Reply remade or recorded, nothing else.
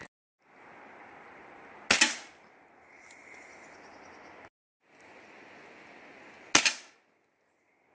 recorded